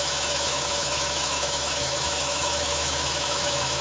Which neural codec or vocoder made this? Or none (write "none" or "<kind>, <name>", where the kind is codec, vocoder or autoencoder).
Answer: autoencoder, DAC-VAE